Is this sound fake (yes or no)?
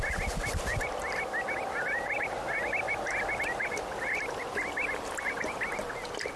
no